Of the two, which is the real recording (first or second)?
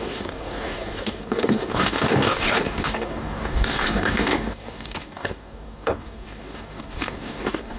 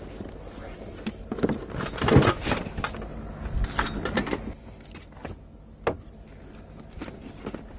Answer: second